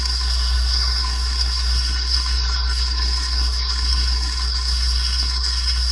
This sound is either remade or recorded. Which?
remade